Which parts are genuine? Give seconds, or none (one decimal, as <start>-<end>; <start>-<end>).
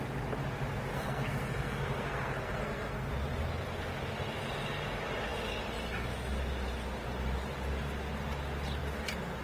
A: 0.0-0.9; 3.1-9.4